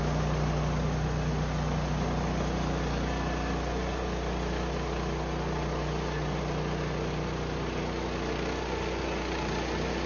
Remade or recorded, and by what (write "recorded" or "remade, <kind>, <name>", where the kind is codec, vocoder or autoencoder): recorded